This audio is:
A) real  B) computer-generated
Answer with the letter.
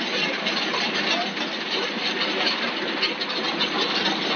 A